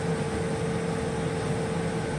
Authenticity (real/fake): real